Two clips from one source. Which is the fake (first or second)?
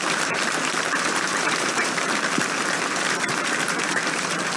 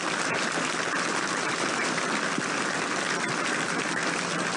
first